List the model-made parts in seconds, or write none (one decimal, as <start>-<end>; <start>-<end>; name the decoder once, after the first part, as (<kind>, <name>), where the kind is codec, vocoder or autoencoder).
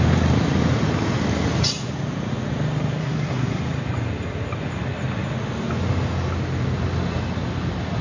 3.0-3.6 (codec, SNAC)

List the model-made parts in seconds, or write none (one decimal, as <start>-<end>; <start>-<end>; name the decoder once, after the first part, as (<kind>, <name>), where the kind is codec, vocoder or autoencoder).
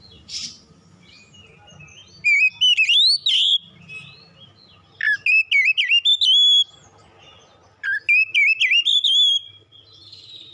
none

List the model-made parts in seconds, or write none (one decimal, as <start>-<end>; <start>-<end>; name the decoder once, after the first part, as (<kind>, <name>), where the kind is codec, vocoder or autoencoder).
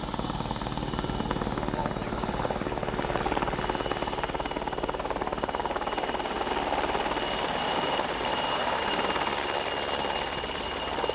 1.8-6.5 (vocoder, BigVGAN v2); 8.3-8.8